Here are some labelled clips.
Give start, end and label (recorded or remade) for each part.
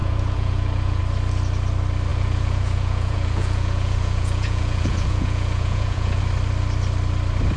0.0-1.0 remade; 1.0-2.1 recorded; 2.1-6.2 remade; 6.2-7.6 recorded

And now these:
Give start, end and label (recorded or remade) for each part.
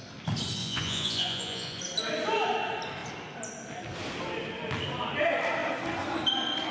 0.0-0.6 recorded; 0.6-1.8 remade; 1.8-6.7 recorded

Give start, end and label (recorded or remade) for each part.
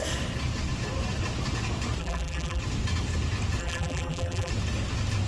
0.0-2.0 recorded; 2.0-2.6 remade; 2.6-3.6 recorded; 3.6-4.5 remade; 4.5-5.3 recorded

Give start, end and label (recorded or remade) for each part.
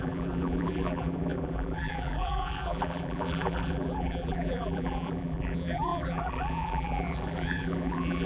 0.0-8.3 remade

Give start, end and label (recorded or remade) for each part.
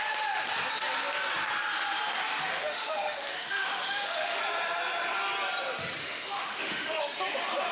0.0-2.2 recorded; 2.2-4.4 remade; 4.4-6.0 recorded; 6.0-7.0 remade; 7.0-7.7 recorded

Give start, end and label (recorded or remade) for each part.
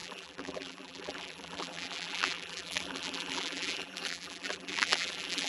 0.0-5.5 remade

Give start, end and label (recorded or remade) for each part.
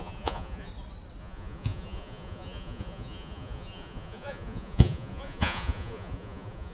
0.0-0.7 remade; 0.7-1.2 recorded; 1.2-6.7 remade